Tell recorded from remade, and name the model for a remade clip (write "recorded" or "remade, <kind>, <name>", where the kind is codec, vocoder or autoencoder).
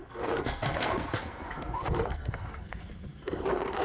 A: remade, codec, SNAC